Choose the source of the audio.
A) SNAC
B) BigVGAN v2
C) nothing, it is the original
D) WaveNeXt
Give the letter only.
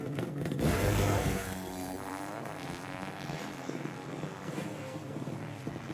A